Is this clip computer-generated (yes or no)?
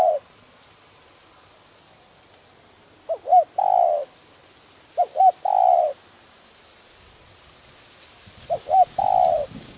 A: no